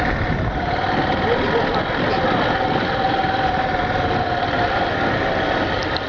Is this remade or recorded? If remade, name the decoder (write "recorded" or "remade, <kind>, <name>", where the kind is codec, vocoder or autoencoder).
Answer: recorded